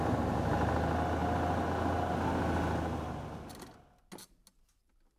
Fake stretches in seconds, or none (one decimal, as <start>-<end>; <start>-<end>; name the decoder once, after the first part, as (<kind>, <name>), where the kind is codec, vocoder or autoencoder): none